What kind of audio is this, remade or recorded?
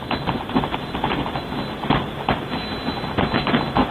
recorded